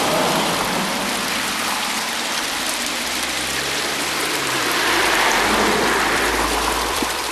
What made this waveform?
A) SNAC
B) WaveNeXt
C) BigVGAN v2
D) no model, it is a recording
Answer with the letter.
C